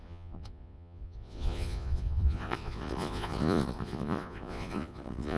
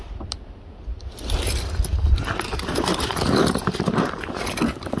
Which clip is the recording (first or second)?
second